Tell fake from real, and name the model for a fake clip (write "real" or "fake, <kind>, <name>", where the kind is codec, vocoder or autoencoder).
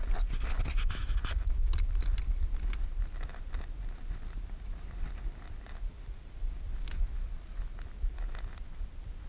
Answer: real